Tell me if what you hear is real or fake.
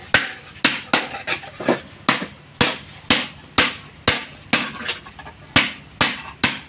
real